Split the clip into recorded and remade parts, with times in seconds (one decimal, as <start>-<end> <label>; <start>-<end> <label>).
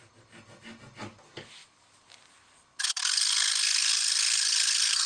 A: 0.0-5.1 recorded